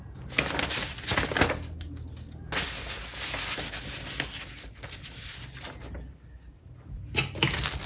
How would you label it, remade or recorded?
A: recorded